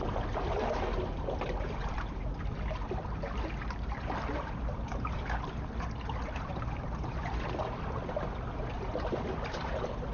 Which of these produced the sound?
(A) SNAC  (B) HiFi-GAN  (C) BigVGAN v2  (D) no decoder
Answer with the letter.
D